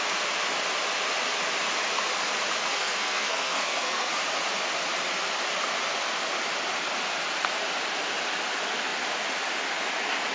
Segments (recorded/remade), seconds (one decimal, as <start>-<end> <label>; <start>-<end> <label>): 0.0-2.7 recorded; 2.7-4.1 remade; 4.1-10.3 recorded